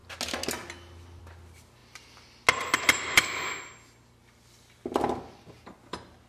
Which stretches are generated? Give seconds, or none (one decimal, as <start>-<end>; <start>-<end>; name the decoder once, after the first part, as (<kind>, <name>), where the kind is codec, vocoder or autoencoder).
none